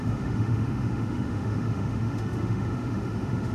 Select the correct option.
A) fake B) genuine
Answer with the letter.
A